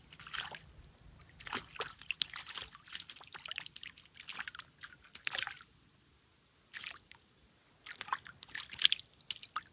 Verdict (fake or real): real